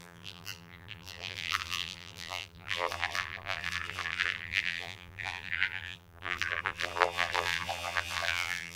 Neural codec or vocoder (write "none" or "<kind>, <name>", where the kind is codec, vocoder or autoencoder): vocoder, BigVGAN v2